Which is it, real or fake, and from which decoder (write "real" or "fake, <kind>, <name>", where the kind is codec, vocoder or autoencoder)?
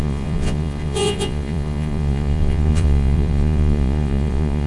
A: fake, vocoder, Vocos